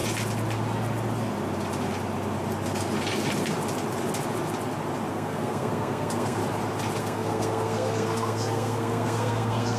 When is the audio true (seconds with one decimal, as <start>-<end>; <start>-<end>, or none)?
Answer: 0.0-5.1; 6.4-7.0